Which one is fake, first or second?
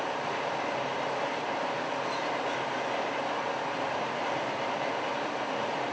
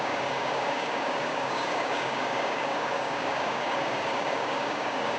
second